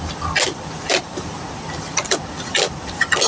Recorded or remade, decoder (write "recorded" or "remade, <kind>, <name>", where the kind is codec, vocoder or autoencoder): recorded